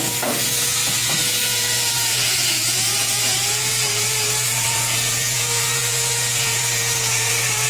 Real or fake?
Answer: fake